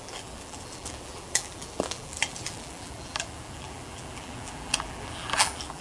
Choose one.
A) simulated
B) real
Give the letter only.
A